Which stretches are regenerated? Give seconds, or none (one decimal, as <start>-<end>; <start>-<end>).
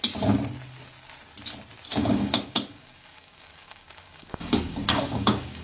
2.0-5.6